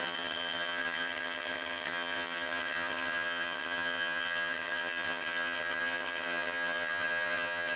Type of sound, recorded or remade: remade